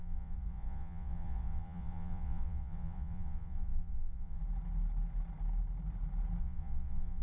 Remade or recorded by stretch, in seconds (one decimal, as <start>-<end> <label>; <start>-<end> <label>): 0.0-4.4 remade; 4.4-6.4 recorded; 6.4-7.2 remade

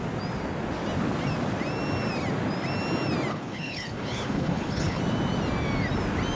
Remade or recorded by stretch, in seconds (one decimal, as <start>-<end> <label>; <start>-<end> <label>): 0.0-3.3 recorded; 3.3-5.0 remade; 5.0-6.3 recorded

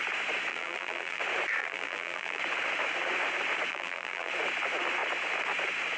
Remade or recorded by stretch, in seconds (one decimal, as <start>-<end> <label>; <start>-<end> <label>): 0.0-0.5 recorded; 0.5-1.2 remade; 1.2-1.6 recorded; 1.6-2.4 remade; 2.4-3.7 recorded; 3.7-4.3 remade; 4.3-6.0 recorded

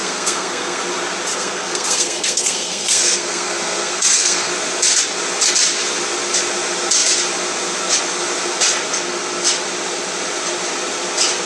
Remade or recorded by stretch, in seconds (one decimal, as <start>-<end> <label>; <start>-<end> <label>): 0.0-0.8 remade; 0.8-1.3 recorded; 1.3-4.5 remade; 4.5-11.4 recorded

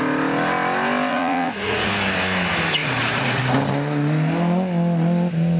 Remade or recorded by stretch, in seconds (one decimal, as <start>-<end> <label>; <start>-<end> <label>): 0.0-1.1 recorded; 1.1-1.9 remade; 1.9-2.8 recorded; 2.8-3.4 remade; 3.4-5.6 recorded

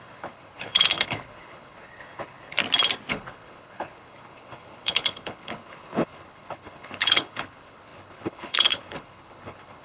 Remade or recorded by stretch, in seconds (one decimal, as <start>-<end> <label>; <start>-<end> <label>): 0.0-2.6 remade; 2.6-3.1 recorded; 3.1-9.8 remade